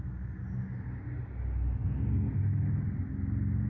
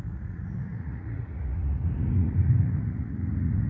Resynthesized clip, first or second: second